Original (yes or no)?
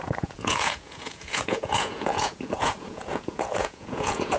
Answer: no